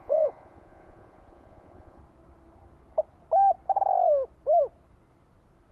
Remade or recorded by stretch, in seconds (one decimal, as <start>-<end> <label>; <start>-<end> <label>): 0.0-2.0 remade; 2.0-5.7 recorded